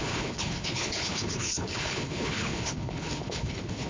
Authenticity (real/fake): fake